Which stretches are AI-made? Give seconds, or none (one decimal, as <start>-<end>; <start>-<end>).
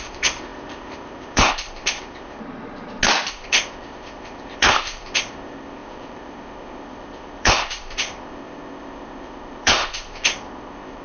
0.0-2.4; 3.3-11.0